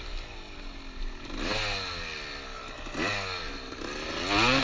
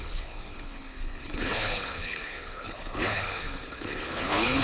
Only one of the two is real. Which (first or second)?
first